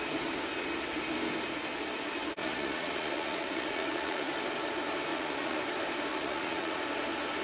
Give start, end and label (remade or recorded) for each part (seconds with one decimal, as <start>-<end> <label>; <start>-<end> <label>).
0.0-2.4 recorded; 2.4-4.3 remade; 4.3-5.1 recorded; 5.1-5.6 remade; 5.6-6.1 recorded; 6.1-6.8 remade; 6.8-7.4 recorded